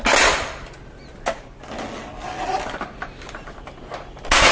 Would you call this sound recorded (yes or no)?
yes